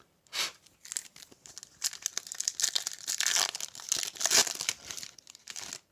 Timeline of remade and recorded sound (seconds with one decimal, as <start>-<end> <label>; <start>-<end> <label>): 0.0-5.9 recorded